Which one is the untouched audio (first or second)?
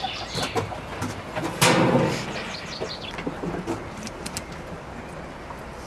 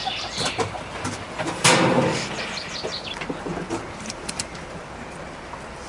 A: first